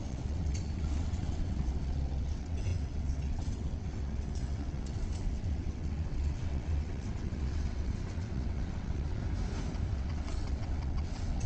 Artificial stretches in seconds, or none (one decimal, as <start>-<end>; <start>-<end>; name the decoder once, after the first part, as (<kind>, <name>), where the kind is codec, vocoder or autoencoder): 0.0-9.2 (vocoder, WaveNeXt); 9.9-11.5